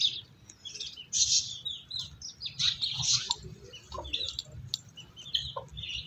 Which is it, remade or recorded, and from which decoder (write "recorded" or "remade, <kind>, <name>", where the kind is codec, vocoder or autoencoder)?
recorded